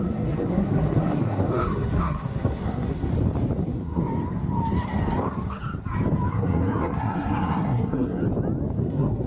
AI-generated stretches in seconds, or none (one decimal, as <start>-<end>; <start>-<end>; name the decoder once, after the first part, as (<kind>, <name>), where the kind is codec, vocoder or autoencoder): 0.0-3.1 (codec, SNAC); 3.6-4.0; 6.3-8.2; 8.8-9.3